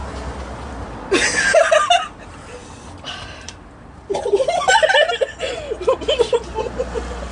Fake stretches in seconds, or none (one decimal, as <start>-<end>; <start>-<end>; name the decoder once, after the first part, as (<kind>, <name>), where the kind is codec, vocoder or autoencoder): 1.4-2.6 (vocoder, BigVGAN v2)